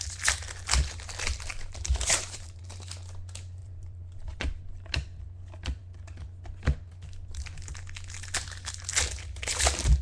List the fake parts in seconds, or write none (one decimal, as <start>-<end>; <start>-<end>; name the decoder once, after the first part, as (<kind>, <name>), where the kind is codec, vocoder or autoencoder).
1.5-2.6 (vocoder, BigVGAN v2); 3.6-4.9